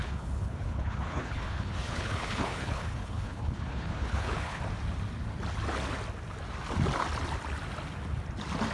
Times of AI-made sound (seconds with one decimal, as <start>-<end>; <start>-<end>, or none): 0.0-4.6